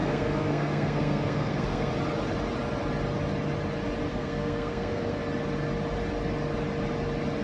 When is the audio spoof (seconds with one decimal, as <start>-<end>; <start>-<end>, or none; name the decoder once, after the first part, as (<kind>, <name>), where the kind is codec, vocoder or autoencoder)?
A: 0.0-1.9 (codec, SNAC); 4.1-5.2